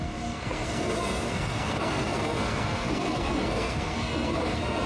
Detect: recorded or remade remade